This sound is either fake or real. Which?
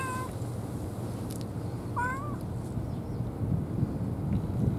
real